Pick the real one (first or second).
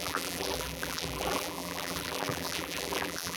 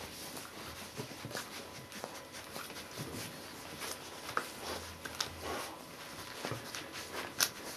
second